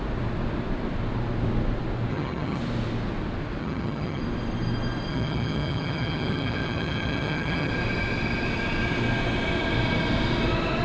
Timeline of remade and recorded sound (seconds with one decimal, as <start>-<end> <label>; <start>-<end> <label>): 0.0-2.1 recorded; 2.1-2.6 remade; 2.6-3.6 recorded; 3.6-4.2 remade; 4.2-5.1 recorded; 5.1-7.7 remade; 7.7-10.8 recorded